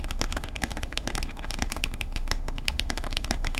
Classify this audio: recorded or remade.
remade